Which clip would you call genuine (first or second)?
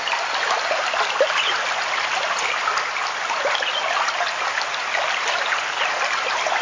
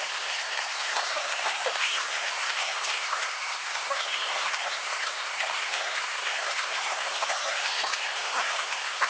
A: first